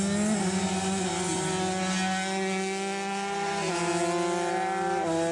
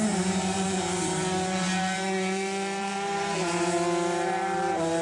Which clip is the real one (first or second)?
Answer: first